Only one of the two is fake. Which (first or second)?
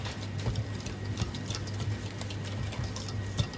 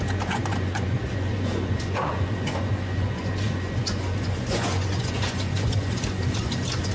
second